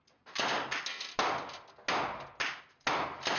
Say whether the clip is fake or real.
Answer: real